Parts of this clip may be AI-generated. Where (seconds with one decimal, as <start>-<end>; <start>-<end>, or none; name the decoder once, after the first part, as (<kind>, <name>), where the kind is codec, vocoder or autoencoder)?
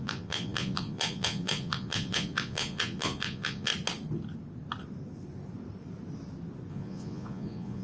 0.0-3.7 (vocoder, Vocos); 6.7-7.8